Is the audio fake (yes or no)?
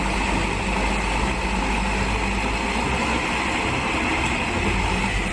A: no